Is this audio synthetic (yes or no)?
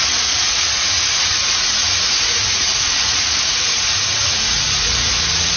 yes